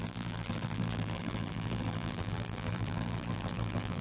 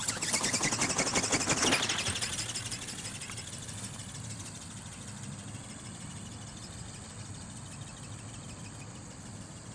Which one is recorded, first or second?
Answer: second